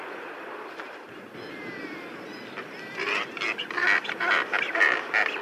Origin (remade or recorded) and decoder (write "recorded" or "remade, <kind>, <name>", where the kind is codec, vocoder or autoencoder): recorded